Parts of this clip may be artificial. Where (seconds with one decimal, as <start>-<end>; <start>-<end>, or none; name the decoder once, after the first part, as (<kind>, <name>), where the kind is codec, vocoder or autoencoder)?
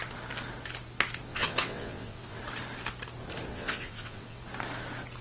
1.3-2.4 (vocoder, WaveNeXt); 3.5-4.4